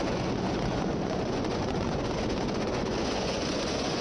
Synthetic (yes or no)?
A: yes